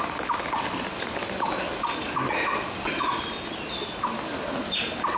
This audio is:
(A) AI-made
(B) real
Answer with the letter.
B